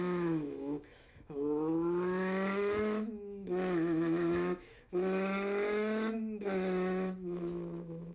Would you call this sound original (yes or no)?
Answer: no